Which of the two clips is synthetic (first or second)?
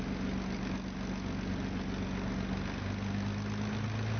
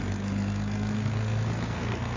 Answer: second